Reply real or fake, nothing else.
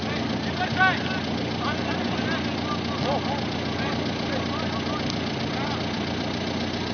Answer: real